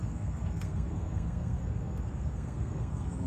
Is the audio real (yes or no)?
no